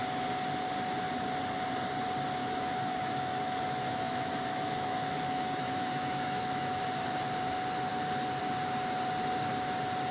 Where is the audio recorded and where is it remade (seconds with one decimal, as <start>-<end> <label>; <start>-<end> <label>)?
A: 0.0-2.4 recorded; 2.4-6.8 remade; 6.8-10.1 recorded